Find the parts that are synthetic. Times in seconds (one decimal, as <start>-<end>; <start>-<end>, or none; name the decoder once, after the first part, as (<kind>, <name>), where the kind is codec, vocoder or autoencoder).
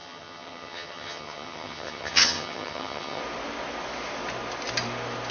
0.0-3.2 (vocoder, HiFi-GAN)